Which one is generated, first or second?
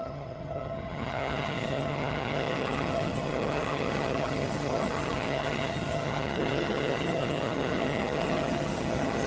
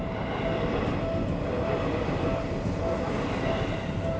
first